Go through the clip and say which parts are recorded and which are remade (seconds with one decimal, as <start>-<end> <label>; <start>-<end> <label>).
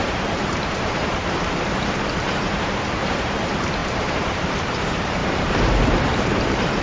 0.0-6.8 remade